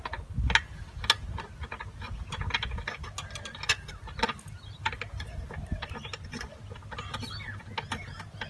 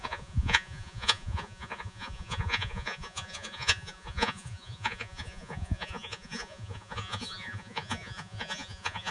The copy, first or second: second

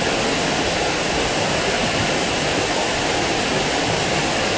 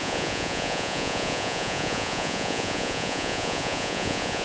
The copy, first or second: second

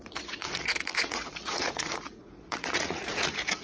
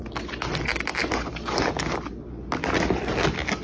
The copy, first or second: first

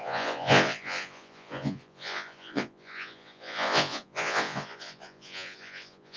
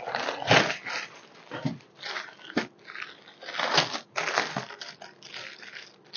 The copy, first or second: first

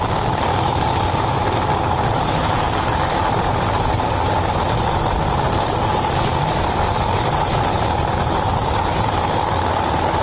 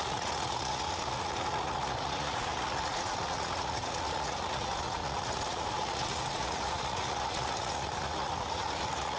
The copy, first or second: second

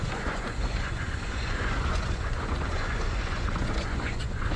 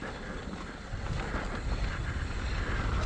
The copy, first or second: first